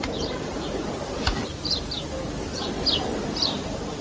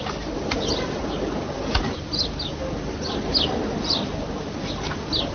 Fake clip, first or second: first